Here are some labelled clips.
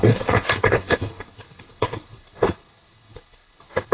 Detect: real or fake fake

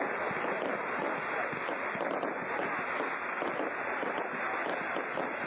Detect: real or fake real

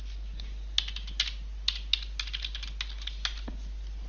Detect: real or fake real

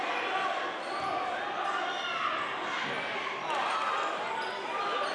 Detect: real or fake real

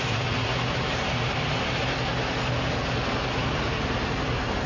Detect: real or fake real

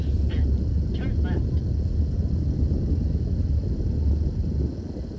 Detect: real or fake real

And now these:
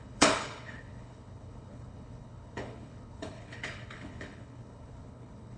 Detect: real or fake fake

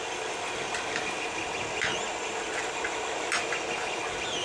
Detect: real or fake real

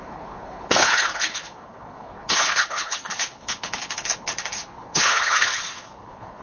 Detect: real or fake fake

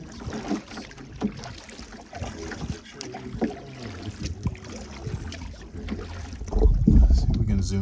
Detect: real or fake real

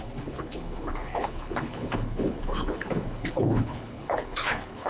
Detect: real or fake fake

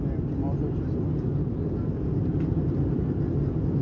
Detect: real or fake real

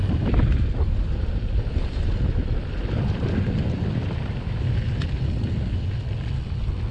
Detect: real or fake real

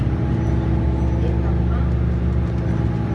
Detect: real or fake real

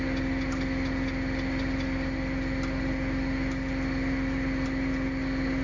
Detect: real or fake real